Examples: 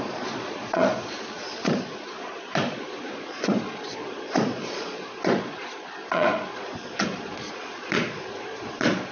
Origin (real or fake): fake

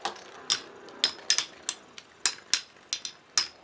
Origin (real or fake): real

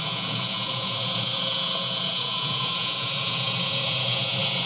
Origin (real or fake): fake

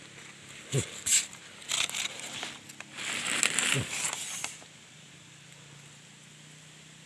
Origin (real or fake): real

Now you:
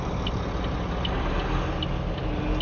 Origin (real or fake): real